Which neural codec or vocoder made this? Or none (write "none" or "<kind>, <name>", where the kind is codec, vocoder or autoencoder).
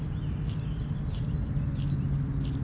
none